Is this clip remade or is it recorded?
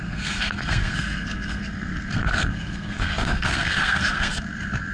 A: remade